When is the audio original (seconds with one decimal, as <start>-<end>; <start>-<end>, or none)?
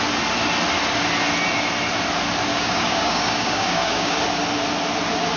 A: 0.0-2.5; 4.2-5.4